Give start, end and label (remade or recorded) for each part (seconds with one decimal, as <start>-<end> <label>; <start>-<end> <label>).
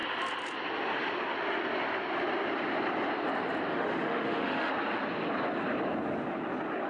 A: 0.0-3.7 recorded; 3.7-4.7 remade; 4.7-6.9 recorded